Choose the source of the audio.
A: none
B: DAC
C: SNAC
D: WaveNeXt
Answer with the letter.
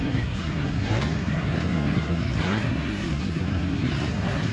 C